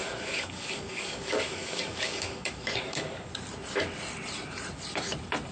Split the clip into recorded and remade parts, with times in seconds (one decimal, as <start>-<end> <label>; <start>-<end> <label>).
0.0-3.3 remade; 3.3-5.5 recorded